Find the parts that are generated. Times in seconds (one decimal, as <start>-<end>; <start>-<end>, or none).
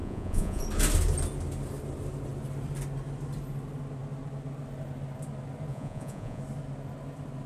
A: 0.0-0.6; 5.7-6.4